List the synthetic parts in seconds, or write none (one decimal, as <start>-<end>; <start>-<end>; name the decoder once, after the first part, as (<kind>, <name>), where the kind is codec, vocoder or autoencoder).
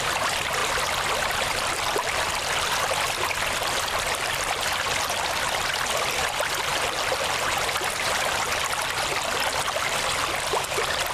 none